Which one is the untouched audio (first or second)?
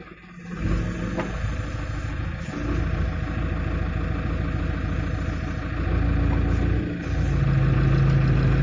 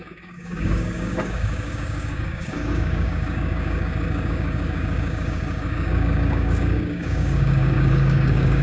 first